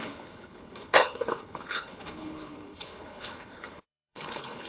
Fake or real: fake